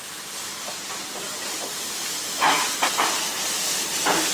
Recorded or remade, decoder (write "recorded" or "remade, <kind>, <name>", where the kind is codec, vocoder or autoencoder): recorded